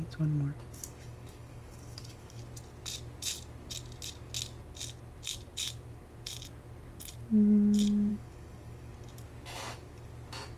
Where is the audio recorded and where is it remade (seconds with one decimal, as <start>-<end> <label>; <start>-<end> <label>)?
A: 0.0-0.8 recorded; 0.8-2.4 remade; 2.4-8.1 recorded; 8.1-8.9 remade; 8.9-10.6 recorded

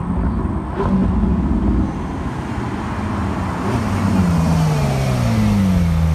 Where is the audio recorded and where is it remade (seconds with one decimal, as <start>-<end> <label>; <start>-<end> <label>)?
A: 0.0-6.1 recorded

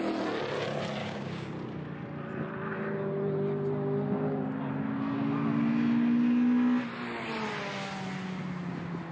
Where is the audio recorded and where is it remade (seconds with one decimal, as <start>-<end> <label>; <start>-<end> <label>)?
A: 0.0-1.0 recorded; 1.0-1.5 remade; 1.5-9.1 recorded

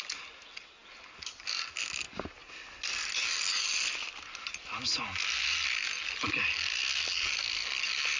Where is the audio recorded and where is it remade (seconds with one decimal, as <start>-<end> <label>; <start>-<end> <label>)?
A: 0.0-8.2 recorded

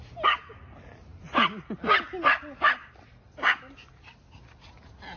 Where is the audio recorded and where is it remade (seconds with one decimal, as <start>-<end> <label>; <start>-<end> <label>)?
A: 0.0-5.2 recorded

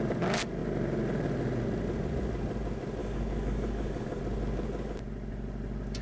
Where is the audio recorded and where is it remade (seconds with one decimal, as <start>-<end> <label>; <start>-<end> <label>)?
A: 0.0-3.0 recorded; 3.0-4.2 remade; 4.2-6.0 recorded